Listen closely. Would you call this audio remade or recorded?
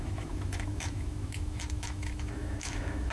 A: remade